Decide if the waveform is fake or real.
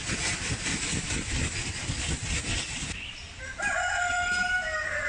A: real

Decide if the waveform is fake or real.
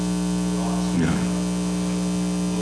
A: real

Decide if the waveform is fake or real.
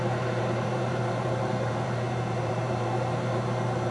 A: fake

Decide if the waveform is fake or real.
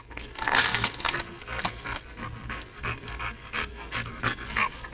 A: fake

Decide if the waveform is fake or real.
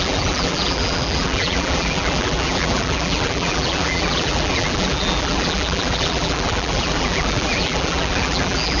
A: fake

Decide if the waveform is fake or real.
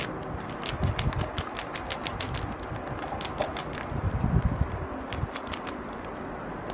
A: real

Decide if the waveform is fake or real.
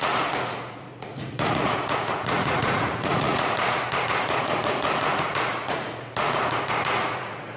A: fake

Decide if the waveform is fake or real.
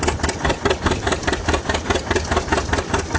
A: real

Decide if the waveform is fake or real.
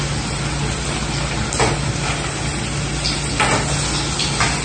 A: real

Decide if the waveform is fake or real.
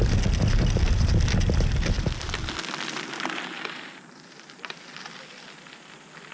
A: real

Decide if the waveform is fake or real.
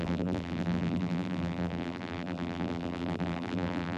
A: fake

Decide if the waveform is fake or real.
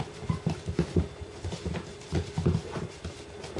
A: real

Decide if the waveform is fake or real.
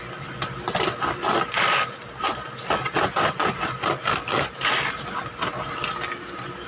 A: real